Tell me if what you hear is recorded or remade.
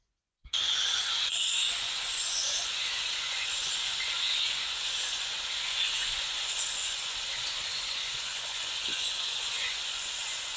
remade